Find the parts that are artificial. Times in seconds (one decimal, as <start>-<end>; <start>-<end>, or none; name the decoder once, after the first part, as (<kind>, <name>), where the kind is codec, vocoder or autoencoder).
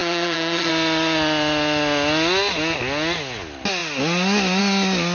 0.0-0.7 (vocoder, HiFi-GAN)